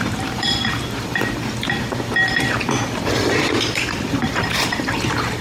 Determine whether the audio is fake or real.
fake